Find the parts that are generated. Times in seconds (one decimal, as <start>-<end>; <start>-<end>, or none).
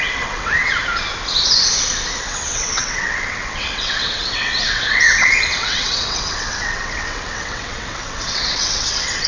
0.0-0.8; 2.2-9.3